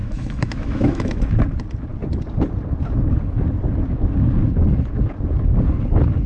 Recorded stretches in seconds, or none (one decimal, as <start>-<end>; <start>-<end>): 1.2-6.3